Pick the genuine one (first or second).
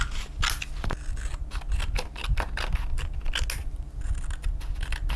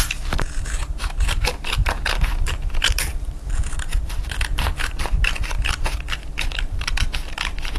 first